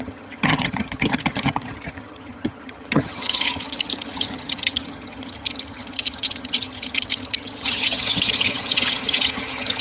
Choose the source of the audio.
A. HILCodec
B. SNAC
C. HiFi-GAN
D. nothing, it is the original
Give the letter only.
C